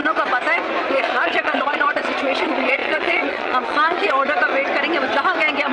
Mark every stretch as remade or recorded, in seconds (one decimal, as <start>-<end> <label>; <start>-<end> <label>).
0.0-0.9 recorded; 0.9-4.5 remade; 4.5-5.7 recorded